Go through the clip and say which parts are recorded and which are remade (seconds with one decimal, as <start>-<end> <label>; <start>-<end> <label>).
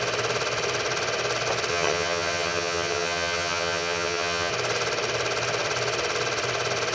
0.0-1.7 recorded; 1.7-4.5 remade; 4.5-6.9 recorded